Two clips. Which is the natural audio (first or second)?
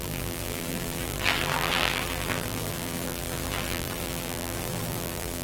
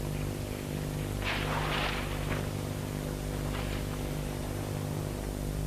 second